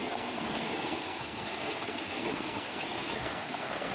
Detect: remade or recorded remade